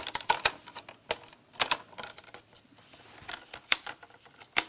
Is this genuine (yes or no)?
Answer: yes